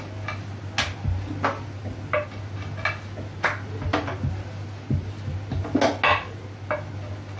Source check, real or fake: real